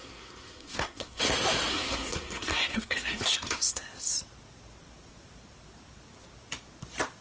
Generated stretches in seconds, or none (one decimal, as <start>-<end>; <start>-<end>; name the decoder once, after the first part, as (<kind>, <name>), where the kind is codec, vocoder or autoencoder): 0.0-1.2 (codec, SNAC); 1.7-4.1